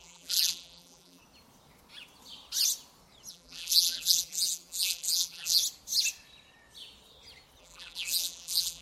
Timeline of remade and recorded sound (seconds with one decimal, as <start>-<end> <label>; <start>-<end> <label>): 0.0-1.2 remade; 1.2-3.3 recorded; 3.3-5.6 remade; 5.6-7.6 recorded; 7.6-8.8 remade